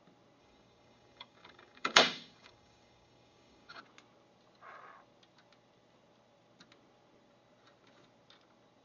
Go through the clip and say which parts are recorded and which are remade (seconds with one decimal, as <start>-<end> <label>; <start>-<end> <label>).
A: 0.0-0.4 recorded; 0.4-3.8 remade; 3.8-8.8 recorded